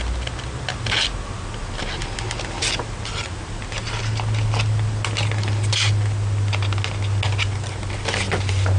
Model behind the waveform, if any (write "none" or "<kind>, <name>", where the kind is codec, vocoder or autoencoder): none